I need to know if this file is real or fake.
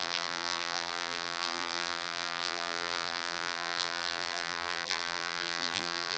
fake